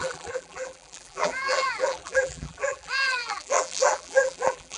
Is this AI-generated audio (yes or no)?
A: yes